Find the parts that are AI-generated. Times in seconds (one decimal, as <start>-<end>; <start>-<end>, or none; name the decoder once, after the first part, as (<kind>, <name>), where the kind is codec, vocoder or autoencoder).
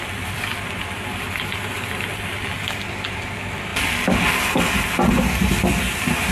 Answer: none